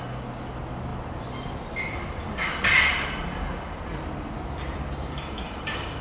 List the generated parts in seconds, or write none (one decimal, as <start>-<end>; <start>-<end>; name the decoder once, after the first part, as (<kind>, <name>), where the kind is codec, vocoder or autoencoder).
0.9-1.5 (vocoder, BigVGAN v2); 2.9-6.0